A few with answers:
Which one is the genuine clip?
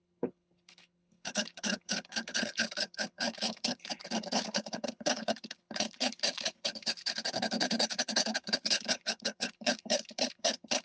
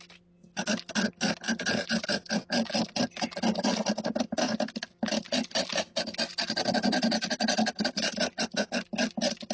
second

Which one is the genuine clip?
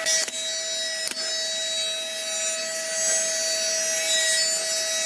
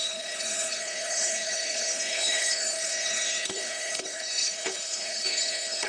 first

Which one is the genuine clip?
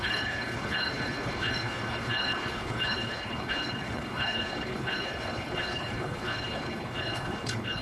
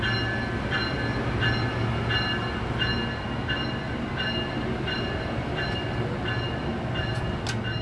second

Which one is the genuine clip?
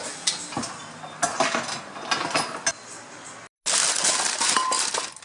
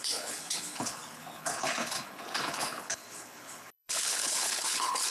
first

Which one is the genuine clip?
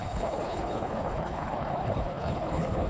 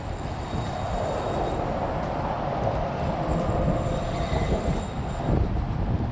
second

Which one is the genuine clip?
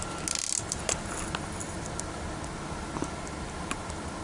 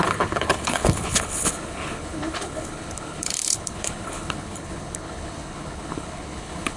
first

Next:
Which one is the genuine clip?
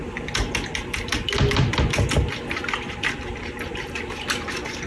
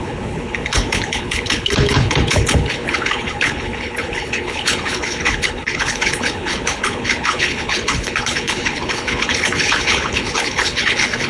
first